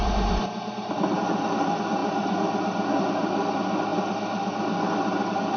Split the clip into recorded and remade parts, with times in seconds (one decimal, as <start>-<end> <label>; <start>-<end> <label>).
0.0-0.7 remade; 0.7-5.6 recorded